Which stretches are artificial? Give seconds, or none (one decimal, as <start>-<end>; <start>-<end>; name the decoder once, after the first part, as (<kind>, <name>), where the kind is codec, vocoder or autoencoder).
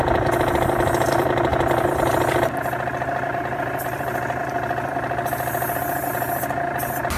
none